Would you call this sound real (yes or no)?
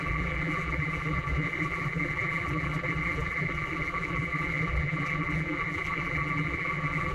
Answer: no